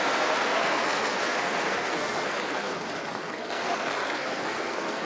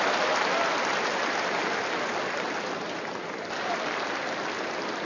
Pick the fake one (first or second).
first